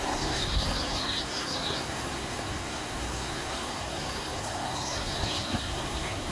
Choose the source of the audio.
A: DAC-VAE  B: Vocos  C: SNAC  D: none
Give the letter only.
C